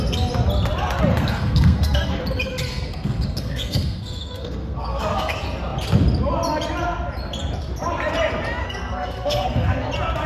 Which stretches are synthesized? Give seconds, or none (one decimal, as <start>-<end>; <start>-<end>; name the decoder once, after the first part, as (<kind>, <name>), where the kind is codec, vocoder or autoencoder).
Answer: 1.1-2.2 (codec, SNAC); 2.7-5.3; 8.6-9.9